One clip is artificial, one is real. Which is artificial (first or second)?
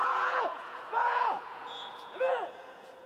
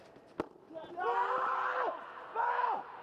first